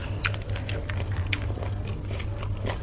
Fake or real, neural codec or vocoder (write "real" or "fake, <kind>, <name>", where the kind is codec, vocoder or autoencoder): real